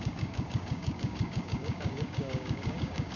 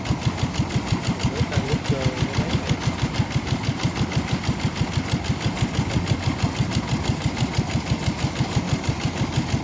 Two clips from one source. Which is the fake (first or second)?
first